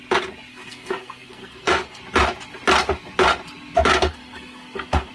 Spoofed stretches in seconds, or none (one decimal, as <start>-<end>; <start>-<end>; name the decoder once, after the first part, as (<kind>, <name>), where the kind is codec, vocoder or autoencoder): 0.5-2.0 (codec, SNAC); 3.9-5.1